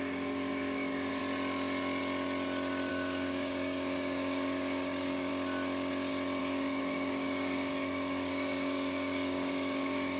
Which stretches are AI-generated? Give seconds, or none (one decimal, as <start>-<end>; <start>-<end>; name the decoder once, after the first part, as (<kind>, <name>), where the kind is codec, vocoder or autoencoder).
0.0-1.2 (codec, DAC); 2.9-5.3; 6.4-10.2